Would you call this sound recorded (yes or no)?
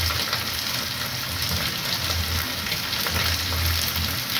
yes